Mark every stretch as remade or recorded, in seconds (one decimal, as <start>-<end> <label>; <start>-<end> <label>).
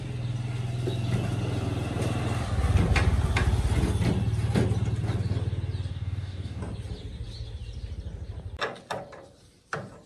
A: 0.0-5.9 recorded; 5.9-6.6 remade; 6.6-10.1 recorded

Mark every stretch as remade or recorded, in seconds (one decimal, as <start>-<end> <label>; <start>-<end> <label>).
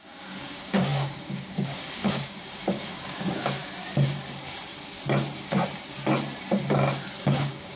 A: 0.0-3.6 remade; 3.6-7.2 recorded; 7.2-7.8 remade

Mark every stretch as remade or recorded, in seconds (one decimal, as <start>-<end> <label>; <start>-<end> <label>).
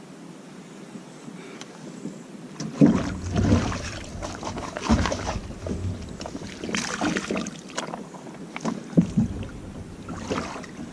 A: 0.0-4.1 recorded; 4.1-5.4 remade; 5.4-10.9 recorded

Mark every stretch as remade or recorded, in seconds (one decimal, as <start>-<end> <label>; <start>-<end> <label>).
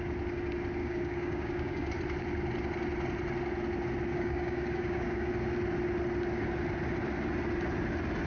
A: 0.0-0.8 recorded; 0.8-1.9 remade; 1.9-4.1 recorded; 4.1-5.3 remade; 5.3-8.3 recorded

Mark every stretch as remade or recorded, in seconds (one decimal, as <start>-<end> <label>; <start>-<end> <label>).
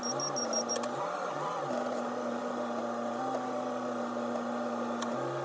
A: 0.0-5.4 recorded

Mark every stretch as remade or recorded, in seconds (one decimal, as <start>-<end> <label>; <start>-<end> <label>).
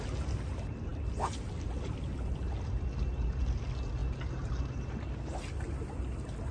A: 0.0-6.5 recorded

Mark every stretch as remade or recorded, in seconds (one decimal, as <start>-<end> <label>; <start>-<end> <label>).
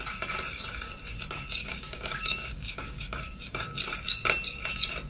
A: 0.0-1.6 recorded; 1.6-3.8 remade; 3.8-5.1 recorded